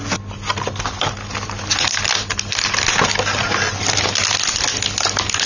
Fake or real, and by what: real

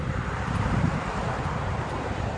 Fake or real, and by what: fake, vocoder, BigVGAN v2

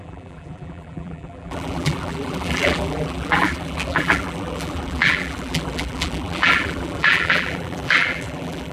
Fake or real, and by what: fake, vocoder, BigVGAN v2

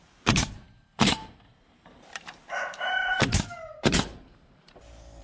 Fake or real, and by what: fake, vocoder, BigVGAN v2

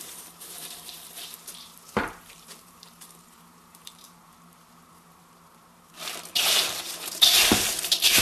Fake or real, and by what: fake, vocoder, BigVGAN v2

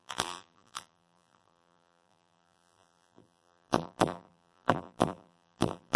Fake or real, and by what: fake, vocoder, BigVGAN v2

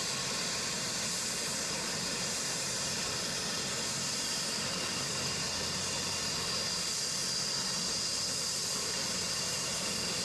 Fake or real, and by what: fake, vocoder, BigVGAN v2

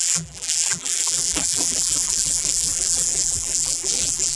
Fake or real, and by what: fake, vocoder, BigVGAN v2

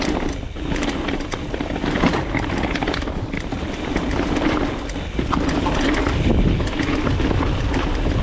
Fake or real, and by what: real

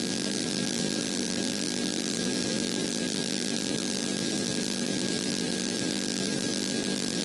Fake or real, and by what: fake, vocoder, BigVGAN v2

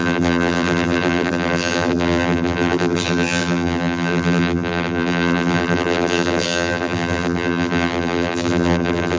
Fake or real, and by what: fake, vocoder, BigVGAN v2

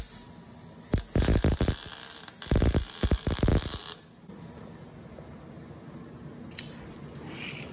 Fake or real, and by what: real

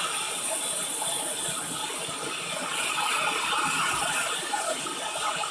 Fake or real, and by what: fake, vocoder, BigVGAN v2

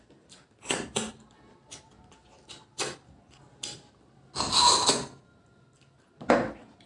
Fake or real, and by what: real